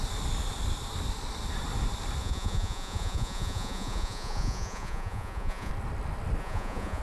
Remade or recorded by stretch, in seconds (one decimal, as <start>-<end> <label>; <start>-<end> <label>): 0.0-2.2 recorded; 2.2-5.7 remade; 5.7-6.4 recorded; 6.4-7.0 remade